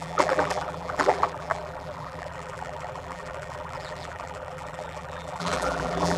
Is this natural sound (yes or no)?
no